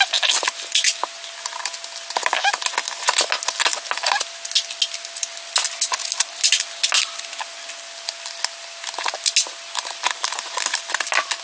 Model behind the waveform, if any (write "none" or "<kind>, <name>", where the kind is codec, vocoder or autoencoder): none